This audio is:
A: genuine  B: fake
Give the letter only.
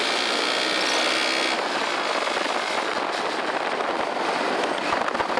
A